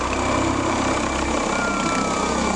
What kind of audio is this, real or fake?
real